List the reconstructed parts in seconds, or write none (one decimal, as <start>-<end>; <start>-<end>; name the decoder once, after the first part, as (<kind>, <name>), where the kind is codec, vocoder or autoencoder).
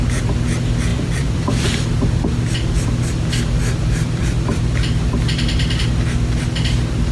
0.9-1.9 (vocoder, BigVGAN v2); 3.8-5.8